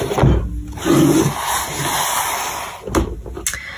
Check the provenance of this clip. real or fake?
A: real